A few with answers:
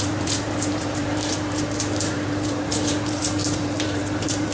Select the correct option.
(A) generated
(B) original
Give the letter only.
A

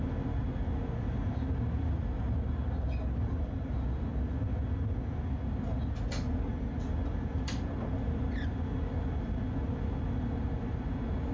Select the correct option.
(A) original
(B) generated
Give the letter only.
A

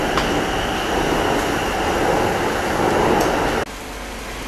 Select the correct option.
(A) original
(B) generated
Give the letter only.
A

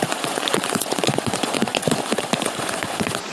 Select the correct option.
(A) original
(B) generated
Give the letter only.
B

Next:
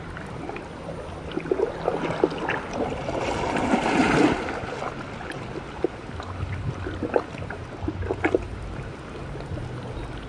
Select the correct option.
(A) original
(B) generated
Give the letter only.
A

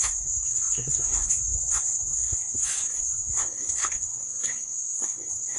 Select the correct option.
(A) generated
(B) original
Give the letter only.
A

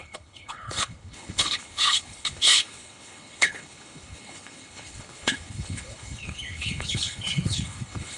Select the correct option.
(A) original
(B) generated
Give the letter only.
B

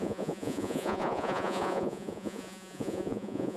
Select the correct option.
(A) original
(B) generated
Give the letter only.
B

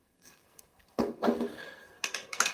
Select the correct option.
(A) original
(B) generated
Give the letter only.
B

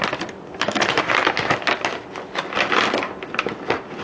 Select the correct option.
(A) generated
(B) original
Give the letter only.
B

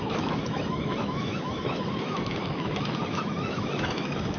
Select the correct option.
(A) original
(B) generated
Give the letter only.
B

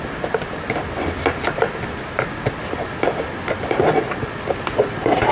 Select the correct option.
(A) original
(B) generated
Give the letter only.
A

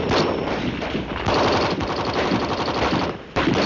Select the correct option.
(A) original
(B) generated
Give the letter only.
B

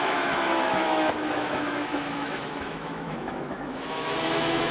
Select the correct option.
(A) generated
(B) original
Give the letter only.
A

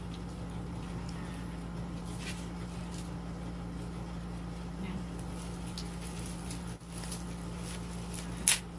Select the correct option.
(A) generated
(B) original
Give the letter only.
B